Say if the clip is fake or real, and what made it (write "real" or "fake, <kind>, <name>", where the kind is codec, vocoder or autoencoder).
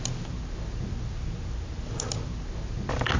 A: real